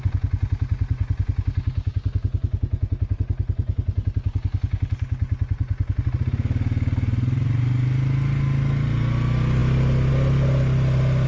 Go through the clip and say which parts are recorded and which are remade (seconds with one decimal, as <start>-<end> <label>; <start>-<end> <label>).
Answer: 0.0-11.3 recorded